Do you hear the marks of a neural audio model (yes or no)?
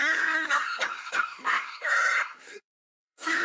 yes